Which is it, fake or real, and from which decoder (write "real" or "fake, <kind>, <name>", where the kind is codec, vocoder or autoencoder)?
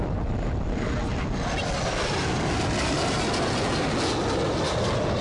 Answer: real